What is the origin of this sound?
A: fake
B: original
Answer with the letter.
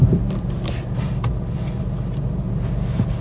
B